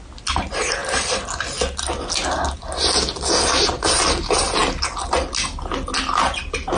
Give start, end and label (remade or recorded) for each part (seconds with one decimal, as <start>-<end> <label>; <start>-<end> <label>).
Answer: 0.0-6.8 recorded

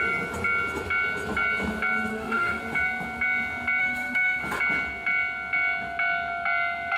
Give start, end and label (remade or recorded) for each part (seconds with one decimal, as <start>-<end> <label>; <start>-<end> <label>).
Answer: 0.0-2.1 recorded; 2.1-2.6 remade; 2.6-3.8 recorded; 3.8-4.4 remade; 4.4-7.0 recorded

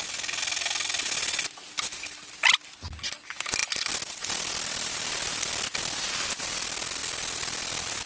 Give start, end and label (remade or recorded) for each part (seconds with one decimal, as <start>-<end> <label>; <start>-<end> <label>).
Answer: 0.0-8.1 recorded

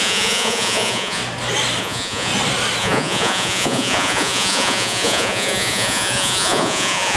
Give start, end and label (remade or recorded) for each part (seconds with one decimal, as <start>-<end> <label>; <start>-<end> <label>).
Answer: 0.0-1.2 remade; 1.2-1.8 recorded; 1.8-2.3 remade; 2.3-2.8 recorded; 2.8-7.2 remade